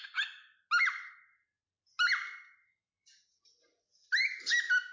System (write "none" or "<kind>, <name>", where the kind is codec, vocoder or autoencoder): none